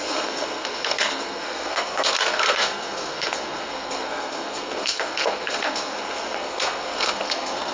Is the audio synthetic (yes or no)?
yes